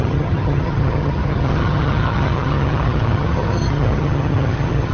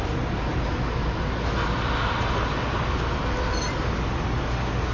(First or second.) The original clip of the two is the second